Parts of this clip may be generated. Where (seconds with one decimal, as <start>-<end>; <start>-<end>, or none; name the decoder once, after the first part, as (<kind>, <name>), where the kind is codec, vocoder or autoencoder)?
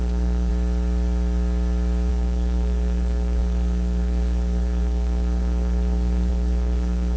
0.0-0.5 (codec, SNAC); 2.1-7.2